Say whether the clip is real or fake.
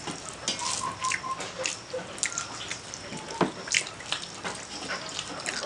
real